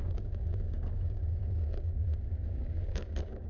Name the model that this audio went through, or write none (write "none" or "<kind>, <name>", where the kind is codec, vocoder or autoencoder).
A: codec, DAC